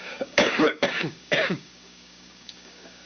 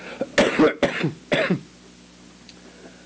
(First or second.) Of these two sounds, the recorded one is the second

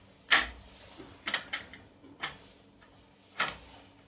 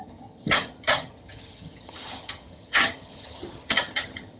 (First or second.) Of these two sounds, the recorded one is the first